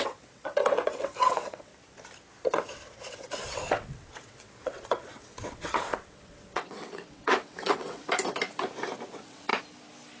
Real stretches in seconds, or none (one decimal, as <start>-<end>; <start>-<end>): 1.7-2.5; 8.0-9.1; 9.5-10.2